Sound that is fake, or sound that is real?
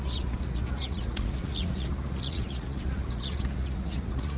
fake